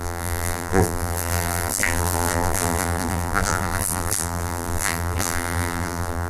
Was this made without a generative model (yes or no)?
no